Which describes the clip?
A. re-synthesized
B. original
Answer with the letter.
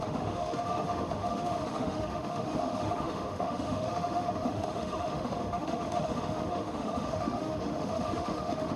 A